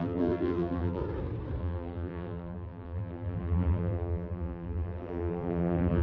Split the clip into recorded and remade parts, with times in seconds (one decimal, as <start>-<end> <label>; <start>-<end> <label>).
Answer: 0.0-1.0 remade; 1.0-1.6 recorded; 1.6-6.0 remade